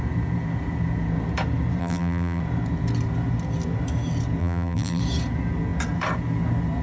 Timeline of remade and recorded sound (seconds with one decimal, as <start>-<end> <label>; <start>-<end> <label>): 0.0-1.8 recorded; 1.8-2.4 remade; 2.4-4.4 recorded; 4.4-5.0 remade; 5.0-6.8 recorded